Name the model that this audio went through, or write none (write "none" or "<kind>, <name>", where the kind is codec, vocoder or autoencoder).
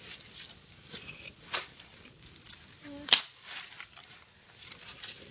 none